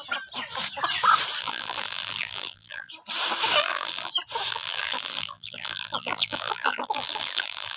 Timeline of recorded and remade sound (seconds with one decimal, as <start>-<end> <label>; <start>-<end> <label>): 0.0-1.4 recorded; 1.4-2.9 remade; 2.9-3.6 recorded; 3.6-4.1 remade; 4.1-4.5 recorded; 4.5-7.8 remade